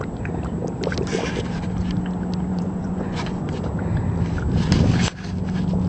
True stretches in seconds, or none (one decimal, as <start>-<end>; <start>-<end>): 0.0-2.5; 3.6-5.9